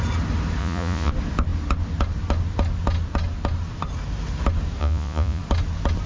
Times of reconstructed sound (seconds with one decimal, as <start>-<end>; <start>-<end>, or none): 0.6-1.1; 4.8-5.4